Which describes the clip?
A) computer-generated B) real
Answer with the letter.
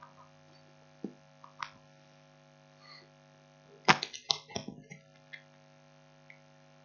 B